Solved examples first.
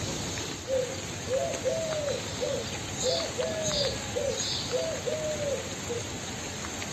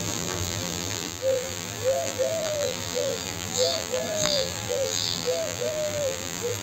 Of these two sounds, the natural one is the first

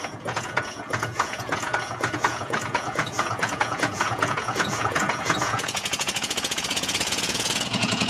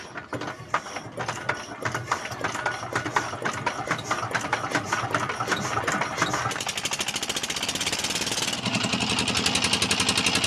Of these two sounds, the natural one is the second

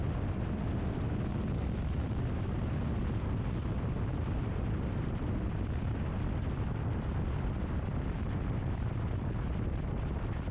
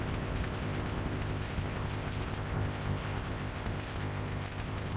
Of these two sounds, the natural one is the first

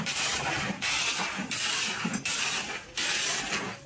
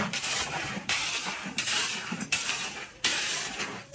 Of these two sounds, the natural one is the first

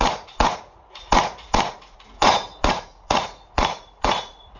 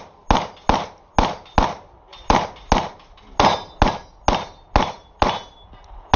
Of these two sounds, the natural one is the second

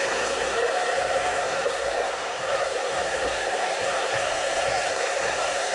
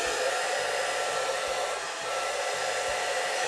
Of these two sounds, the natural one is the second